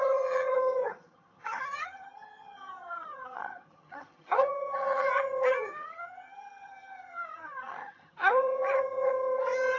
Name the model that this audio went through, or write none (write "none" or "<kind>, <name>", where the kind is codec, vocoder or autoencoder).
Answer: vocoder, HiFi-GAN